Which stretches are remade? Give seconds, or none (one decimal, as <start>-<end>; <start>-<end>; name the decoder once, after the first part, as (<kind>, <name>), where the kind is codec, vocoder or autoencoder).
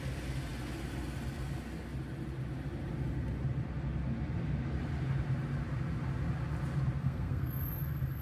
7.0-7.6 (codec, SNAC)